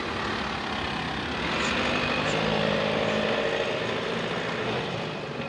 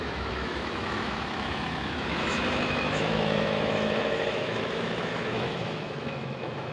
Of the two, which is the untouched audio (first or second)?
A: first